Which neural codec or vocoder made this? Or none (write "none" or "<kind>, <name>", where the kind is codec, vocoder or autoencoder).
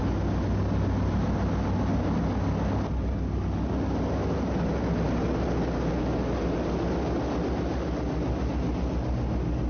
none